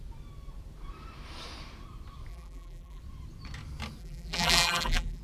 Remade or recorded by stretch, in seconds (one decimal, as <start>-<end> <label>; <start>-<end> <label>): 0.0-2.3 recorded; 2.3-3.0 remade; 3.0-4.0 recorded; 4.0-5.2 remade